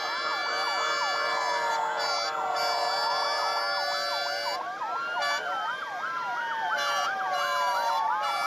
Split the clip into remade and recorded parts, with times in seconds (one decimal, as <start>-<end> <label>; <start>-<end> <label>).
0.0-8.5 recorded